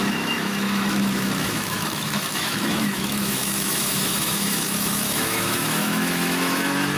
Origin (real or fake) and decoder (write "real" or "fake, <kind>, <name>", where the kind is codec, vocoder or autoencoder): fake, autoencoder, DAC-VAE